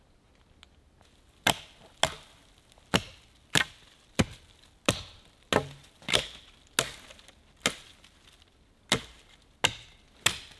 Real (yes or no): yes